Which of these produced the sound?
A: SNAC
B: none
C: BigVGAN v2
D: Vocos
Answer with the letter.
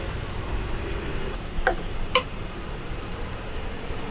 C